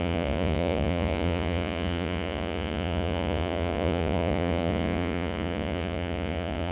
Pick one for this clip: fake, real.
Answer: fake